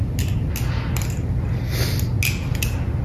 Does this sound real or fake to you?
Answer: real